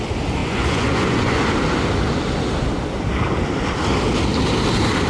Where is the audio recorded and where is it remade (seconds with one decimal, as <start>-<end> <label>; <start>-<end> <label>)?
0.0-0.4 recorded; 0.4-1.4 remade; 1.4-5.1 recorded